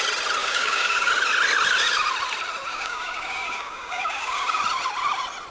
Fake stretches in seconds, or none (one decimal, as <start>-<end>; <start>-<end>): 0.4-1.1; 2.7-4.6